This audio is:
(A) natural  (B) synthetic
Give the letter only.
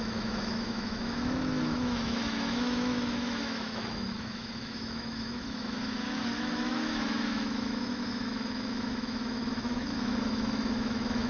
B